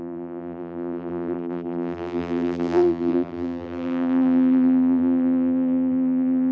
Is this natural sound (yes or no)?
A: no